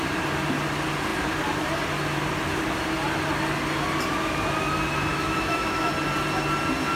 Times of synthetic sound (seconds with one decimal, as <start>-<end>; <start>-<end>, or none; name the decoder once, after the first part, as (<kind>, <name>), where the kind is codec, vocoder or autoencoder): 5.1-5.9 (autoencoder, DAC-VAE)